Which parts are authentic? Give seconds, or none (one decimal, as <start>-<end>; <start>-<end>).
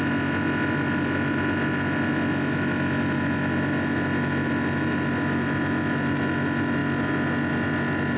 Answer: 0.0-8.2